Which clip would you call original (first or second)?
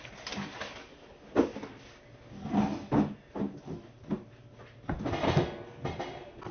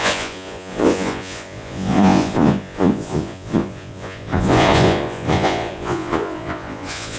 first